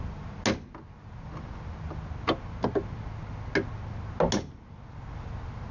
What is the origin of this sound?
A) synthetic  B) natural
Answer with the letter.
B